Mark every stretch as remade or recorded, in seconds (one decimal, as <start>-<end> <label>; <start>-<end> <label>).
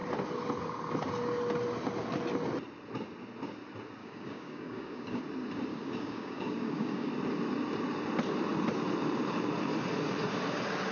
0.0-4.0 recorded; 4.0-5.2 remade; 5.2-5.7 recorded; 5.7-7.1 remade; 7.1-10.9 recorded